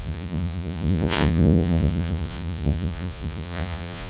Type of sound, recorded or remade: remade